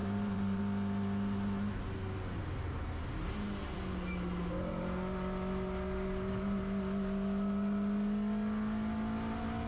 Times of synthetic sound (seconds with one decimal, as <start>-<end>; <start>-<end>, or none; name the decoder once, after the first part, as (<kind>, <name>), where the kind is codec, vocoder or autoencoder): 0.0-0.6 (vocoder, BigVGAN v2)